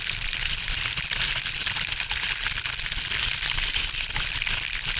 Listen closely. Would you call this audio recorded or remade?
recorded